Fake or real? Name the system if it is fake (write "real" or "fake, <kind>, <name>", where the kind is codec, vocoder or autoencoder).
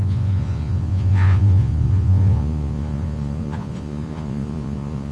fake, vocoder, Vocos